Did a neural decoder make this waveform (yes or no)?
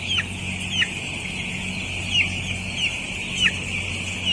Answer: no